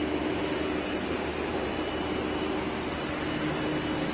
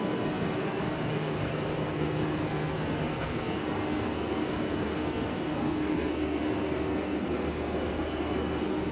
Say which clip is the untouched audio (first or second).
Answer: first